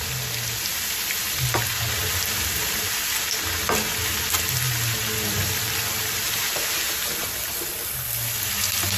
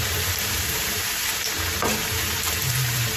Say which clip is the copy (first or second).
second